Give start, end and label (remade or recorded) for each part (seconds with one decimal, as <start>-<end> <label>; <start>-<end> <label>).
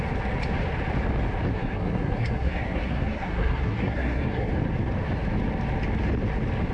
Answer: 0.0-1.5 recorded; 1.5-4.5 remade; 4.5-6.7 recorded